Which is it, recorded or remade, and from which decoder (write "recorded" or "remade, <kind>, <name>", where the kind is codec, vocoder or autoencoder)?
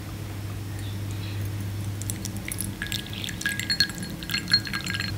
recorded